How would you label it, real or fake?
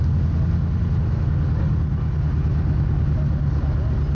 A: real